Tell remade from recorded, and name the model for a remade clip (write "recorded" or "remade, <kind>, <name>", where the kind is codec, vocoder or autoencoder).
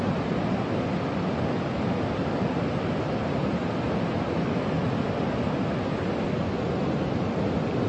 recorded